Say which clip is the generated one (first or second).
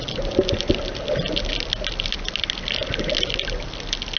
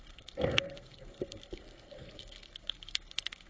second